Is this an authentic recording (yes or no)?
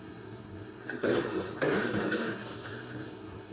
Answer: no